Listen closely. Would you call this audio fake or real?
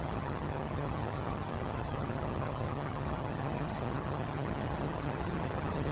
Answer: fake